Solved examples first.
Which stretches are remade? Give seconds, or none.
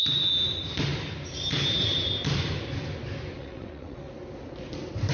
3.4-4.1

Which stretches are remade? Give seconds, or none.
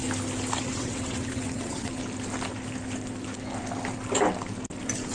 0.6-1.9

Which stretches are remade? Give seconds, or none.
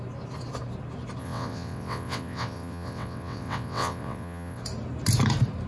1.2-4.6